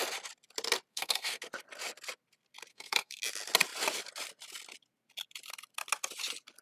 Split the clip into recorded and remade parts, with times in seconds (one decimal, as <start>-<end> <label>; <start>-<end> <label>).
0.0-0.9 recorded; 0.9-1.4 remade; 1.4-2.7 recorded; 2.7-3.2 remade; 3.2-6.6 recorded